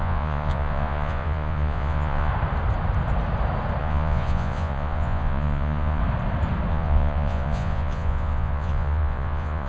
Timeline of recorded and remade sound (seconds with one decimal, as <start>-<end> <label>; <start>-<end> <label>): 0.0-2.3 remade; 2.3-3.8 recorded; 3.8-6.0 remade; 6.0-6.7 recorded; 6.7-9.7 remade